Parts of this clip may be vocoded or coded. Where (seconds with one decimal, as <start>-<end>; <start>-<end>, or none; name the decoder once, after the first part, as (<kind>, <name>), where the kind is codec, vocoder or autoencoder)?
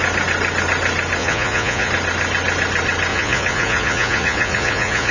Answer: 1.2-1.9 (vocoder, Vocos); 3.1-5.1